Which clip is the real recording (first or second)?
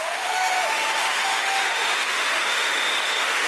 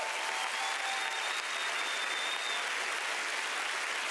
second